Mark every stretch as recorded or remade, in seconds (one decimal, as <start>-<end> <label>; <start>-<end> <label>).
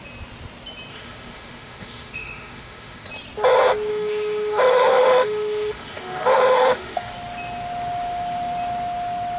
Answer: 0.0-0.9 recorded; 0.9-3.1 remade; 3.1-3.9 recorded; 3.9-7.1 remade; 7.1-9.4 recorded